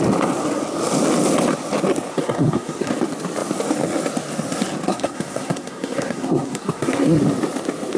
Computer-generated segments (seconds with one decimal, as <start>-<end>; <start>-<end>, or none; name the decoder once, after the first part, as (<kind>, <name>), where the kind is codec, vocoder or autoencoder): 2.1-2.9 (codec, SNAC); 4.9-7.2